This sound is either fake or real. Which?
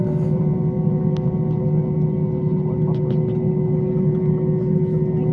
real